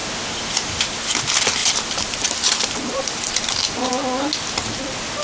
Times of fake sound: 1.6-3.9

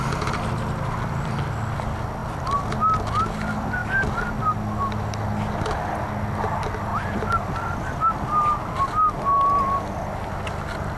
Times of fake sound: none

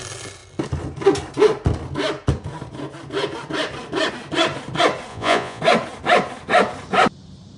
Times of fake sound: 5.1-5.6

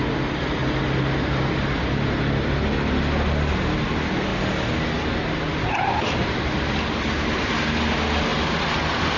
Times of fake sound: 8.3-9.2